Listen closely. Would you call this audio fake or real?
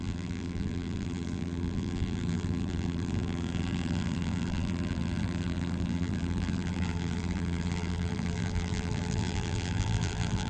fake